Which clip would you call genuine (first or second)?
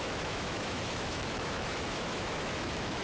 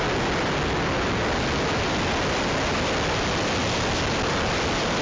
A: second